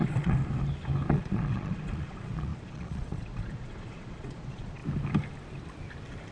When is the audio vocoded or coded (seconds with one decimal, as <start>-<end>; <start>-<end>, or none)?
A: 0.0-0.4; 1.1-4.8